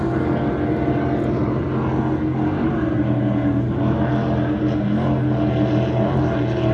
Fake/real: real